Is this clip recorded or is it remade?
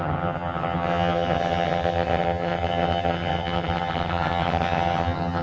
remade